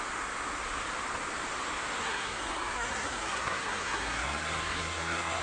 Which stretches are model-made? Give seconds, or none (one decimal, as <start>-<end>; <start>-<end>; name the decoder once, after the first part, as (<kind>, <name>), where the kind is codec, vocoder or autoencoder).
2.0-5.4 (codec, SNAC)